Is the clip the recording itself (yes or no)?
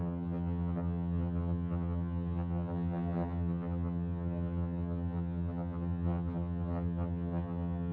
no